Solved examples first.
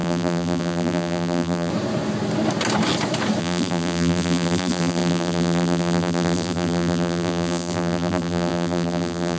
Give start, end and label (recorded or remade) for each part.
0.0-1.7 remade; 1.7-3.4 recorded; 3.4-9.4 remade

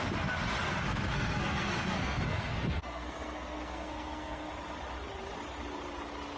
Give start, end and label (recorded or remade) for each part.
0.0-0.7 recorded; 0.7-4.5 remade; 4.5-6.4 recorded

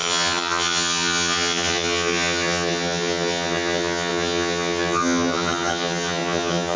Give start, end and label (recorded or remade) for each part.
0.0-6.8 remade

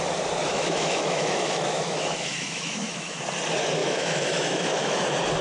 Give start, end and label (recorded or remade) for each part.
0.0-0.4 recorded; 0.4-3.2 remade; 3.2-3.8 recorded; 3.8-5.0 remade; 5.0-5.4 recorded

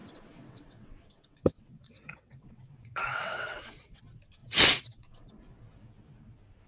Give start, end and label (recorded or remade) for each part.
0.0-4.0 remade; 4.0-4.4 recorded; 4.4-5.3 remade; 5.3-6.7 recorded